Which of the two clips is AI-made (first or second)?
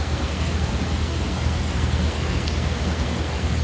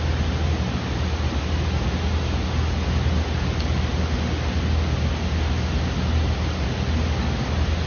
first